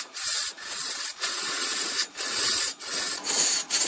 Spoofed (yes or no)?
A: yes